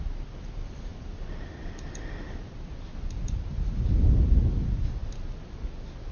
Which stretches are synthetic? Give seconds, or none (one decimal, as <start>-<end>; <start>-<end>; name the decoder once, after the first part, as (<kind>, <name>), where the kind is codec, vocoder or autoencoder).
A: none